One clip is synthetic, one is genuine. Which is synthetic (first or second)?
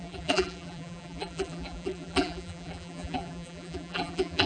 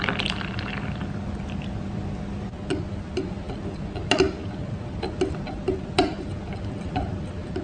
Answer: first